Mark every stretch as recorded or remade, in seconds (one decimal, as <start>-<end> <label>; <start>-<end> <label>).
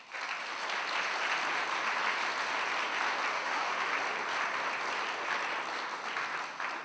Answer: 0.0-3.3 recorded; 3.3-3.9 remade; 3.9-6.8 recorded